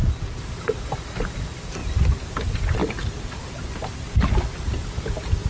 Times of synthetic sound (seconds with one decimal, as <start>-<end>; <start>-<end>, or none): 1.8-2.4